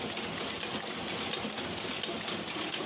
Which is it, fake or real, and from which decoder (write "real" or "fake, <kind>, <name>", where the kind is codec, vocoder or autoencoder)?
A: real